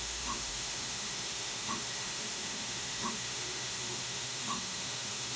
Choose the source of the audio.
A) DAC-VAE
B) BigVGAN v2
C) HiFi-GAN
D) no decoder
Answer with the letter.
A